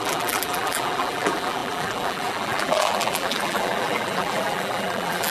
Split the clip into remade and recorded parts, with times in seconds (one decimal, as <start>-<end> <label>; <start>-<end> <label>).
0.0-5.3 remade